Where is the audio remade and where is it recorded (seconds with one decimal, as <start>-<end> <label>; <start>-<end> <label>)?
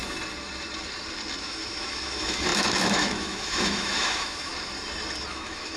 0.0-1.4 recorded; 1.4-4.5 remade; 4.5-5.3 recorded; 5.3-5.8 remade